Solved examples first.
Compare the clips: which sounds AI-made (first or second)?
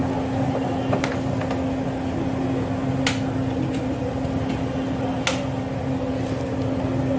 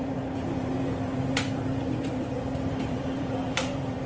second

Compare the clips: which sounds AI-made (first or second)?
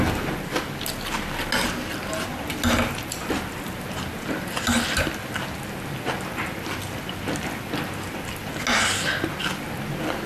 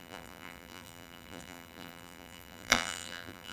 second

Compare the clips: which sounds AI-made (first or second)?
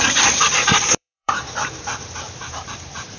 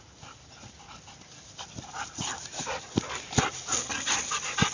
first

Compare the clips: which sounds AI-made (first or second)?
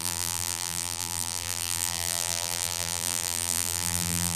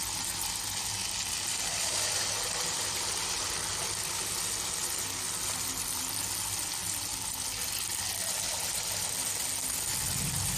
first